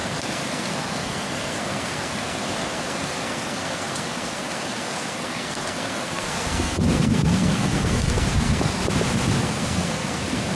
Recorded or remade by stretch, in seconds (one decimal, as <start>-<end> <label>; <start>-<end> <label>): 0.0-8.8 remade; 8.8-9.4 recorded; 9.4-10.5 remade